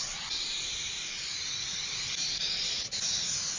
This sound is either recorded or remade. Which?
recorded